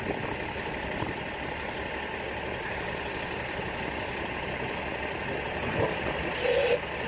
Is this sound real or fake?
real